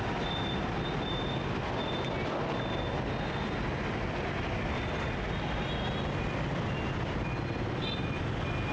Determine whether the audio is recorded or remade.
recorded